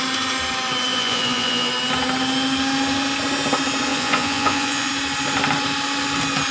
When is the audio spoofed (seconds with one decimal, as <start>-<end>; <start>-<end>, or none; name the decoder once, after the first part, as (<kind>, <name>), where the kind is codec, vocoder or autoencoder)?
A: 0.9-1.7 (vocoder, Vocos); 3.9-4.9